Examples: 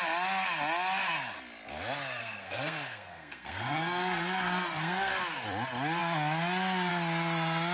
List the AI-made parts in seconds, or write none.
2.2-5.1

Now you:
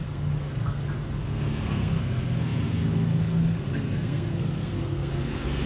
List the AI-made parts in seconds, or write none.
0.0-5.7

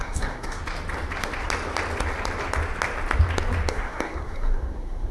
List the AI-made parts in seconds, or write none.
0.0-0.6; 3.7-5.1